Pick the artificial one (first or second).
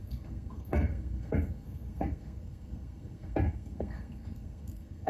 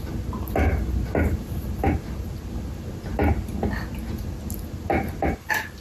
first